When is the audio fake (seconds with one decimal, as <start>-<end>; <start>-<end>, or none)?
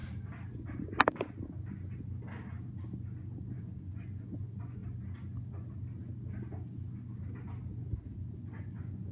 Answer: 3.5-4.8; 8.3-9.1